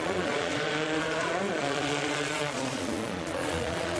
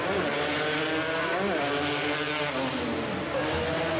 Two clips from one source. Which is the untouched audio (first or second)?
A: second